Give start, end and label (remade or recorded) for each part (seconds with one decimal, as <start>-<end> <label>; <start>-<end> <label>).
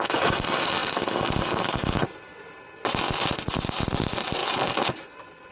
0.0-5.5 recorded